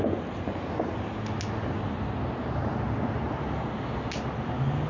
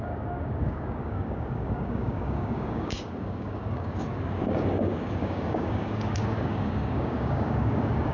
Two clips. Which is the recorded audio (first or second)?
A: first